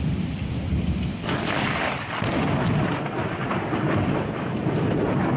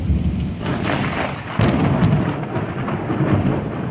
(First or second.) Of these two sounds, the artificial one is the first